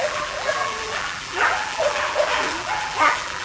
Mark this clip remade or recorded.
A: remade